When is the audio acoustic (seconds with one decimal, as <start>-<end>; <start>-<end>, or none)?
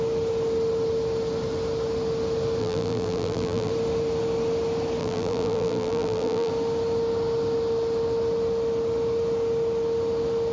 0.0-2.6; 3.7-5.0; 6.5-10.5